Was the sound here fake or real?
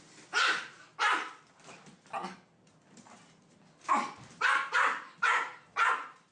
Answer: real